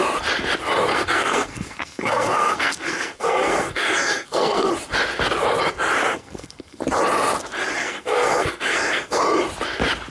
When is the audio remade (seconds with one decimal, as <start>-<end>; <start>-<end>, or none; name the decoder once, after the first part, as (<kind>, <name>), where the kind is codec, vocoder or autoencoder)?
0.9-4.7 (codec, SNAC); 6.1-6.8; 7.8-9.2